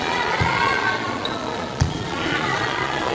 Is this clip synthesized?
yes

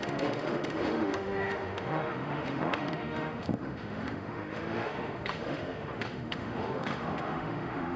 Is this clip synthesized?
yes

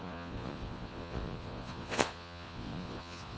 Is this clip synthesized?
yes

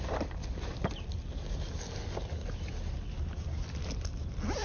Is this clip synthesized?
no